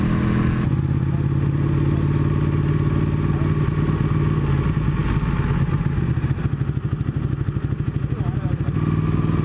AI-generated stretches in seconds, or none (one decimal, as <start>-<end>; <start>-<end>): none